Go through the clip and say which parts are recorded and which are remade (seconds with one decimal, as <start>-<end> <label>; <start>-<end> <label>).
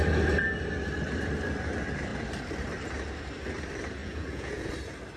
0.0-4.0 recorded; 4.0-4.7 remade; 4.7-5.2 recorded